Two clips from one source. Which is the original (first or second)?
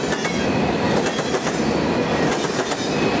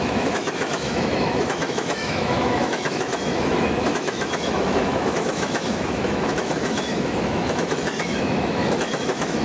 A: first